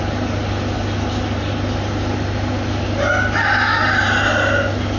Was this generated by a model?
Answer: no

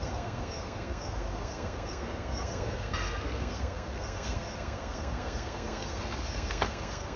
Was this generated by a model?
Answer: yes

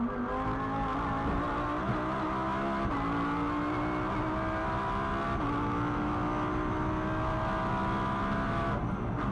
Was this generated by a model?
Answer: no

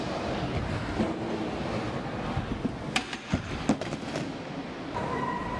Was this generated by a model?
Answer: no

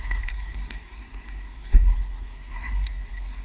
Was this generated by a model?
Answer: yes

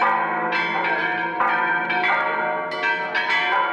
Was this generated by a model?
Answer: no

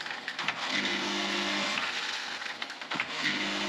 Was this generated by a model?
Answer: yes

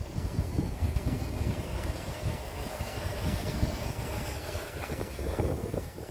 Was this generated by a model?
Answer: yes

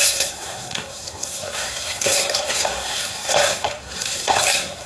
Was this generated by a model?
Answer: yes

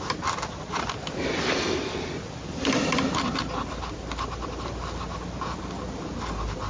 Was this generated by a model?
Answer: no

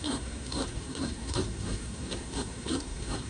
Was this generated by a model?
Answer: yes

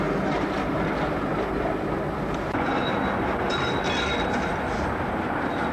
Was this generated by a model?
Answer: no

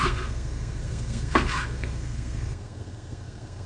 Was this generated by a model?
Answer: yes